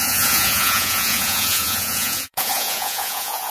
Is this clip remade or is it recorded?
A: remade